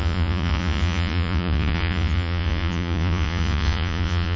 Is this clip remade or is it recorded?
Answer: remade